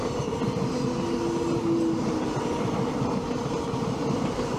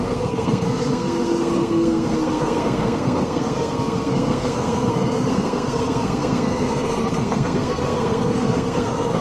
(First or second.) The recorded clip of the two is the first